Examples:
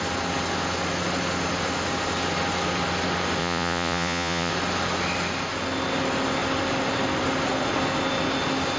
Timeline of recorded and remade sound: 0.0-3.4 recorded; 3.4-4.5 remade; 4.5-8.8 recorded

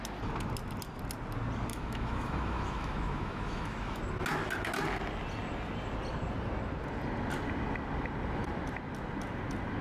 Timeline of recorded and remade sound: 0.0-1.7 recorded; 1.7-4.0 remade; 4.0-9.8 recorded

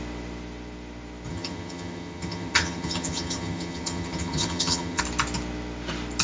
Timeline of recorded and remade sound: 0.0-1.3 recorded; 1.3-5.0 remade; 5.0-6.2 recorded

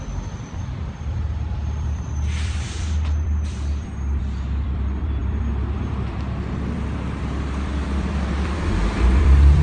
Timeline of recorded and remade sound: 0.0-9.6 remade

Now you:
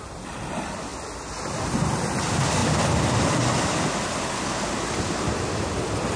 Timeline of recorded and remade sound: 0.0-6.2 recorded